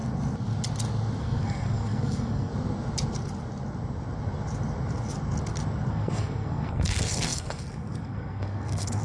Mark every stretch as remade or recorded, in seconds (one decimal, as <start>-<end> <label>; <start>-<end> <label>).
0.0-1.2 recorded; 1.2-2.5 remade; 2.5-5.9 recorded; 5.9-9.0 remade